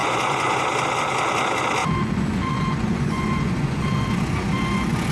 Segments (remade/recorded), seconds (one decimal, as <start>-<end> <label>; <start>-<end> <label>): 0.0-0.6 remade; 0.6-1.8 recorded; 1.8-5.1 remade